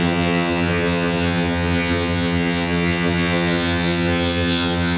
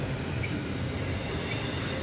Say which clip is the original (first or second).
second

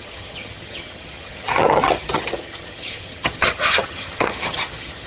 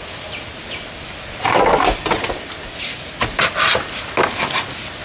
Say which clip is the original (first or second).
second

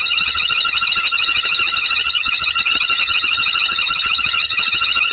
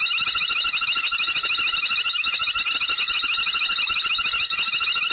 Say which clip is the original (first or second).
second